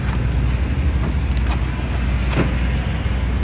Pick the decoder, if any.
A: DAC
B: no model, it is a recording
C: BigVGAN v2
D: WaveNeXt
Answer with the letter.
B